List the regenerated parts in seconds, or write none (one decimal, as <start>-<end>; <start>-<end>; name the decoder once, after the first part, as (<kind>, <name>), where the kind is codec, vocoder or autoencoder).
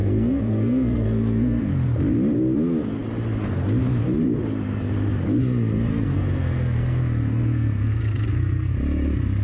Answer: 0.0-1.7 (codec, SNAC); 5.9-8.7